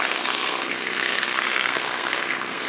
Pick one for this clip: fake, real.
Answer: fake